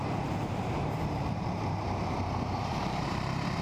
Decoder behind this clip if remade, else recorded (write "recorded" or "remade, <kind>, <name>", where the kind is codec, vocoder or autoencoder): remade, vocoder, BigVGAN v2